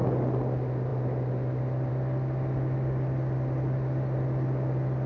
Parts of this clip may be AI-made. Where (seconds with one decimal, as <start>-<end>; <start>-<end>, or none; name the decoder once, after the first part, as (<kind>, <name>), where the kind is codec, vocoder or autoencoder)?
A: none